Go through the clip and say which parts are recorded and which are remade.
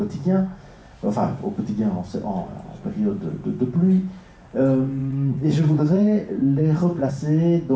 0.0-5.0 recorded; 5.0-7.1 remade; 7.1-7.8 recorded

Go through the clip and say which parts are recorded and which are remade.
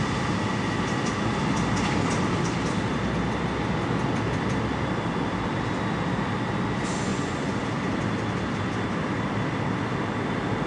0.0-7.1 recorded; 7.1-7.6 remade; 7.6-10.7 recorded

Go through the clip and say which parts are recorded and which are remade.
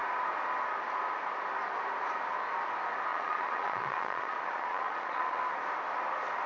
0.0-3.1 recorded; 3.1-5.4 remade; 5.4-6.5 recorded